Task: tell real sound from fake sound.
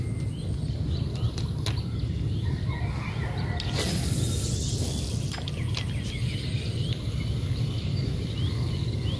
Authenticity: real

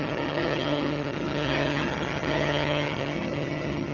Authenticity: fake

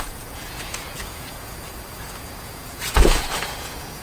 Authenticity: fake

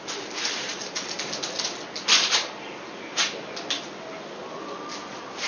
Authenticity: real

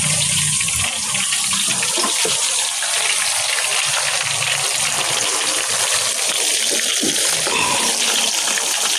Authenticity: fake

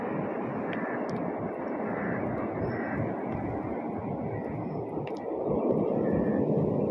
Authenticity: real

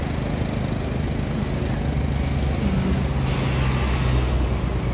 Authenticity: real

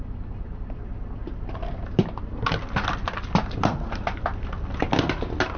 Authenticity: real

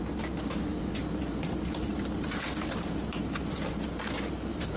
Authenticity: real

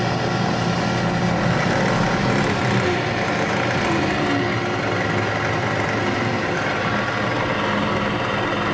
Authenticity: real